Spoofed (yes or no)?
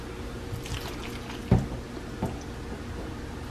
no